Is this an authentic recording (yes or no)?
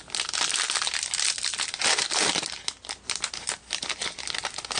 yes